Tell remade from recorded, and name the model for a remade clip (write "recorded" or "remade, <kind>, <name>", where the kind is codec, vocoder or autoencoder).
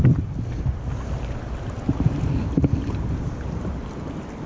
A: recorded